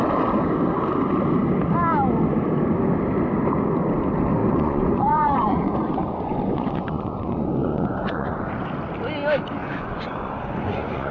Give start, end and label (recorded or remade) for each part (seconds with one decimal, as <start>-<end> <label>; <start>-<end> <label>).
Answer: 0.0-4.4 recorded; 4.4-8.5 remade; 8.5-9.6 recorded; 9.6-11.1 remade